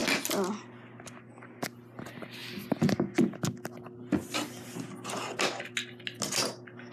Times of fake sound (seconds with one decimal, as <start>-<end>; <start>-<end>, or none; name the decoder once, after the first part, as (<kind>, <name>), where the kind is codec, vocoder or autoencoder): none

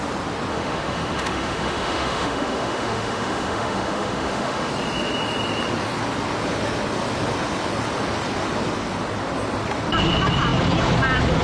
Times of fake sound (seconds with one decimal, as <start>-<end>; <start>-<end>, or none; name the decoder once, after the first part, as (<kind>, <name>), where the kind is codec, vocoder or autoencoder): 0.5-4.7 (autoencoder, DAC-VAE)

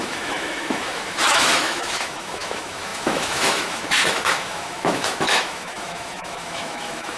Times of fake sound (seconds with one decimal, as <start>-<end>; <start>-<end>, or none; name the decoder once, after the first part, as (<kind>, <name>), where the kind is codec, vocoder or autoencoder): 0.0-7.2 (autoencoder, DAC-VAE)

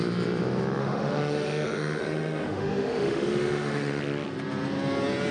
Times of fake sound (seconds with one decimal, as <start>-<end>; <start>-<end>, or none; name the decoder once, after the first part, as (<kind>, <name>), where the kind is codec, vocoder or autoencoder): 0.8-4.0 (autoencoder, DAC-VAE)

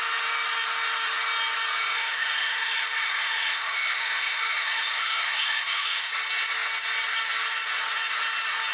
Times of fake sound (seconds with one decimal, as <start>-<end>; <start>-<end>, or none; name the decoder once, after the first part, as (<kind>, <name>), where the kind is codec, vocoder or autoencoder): 1.8-6.1 (autoencoder, DAC-VAE)

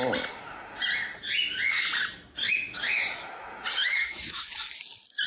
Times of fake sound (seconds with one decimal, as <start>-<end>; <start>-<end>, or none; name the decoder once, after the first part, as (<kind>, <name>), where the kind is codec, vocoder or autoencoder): 2.4-3.0 (autoencoder, DAC-VAE); 3.8-4.5

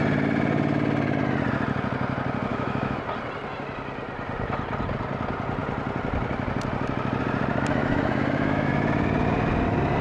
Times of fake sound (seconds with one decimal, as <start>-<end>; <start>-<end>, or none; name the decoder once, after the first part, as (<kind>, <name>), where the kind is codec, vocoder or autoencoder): 2.5-3.0 (autoencoder, DAC-VAE); 7.8-8.7

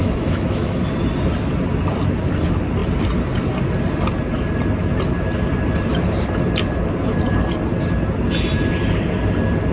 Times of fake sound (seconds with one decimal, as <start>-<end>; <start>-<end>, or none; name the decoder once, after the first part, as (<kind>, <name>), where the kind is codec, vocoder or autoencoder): 0.0-0.8 (autoencoder, DAC-VAE)